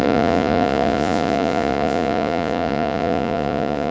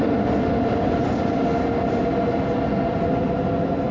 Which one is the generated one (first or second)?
first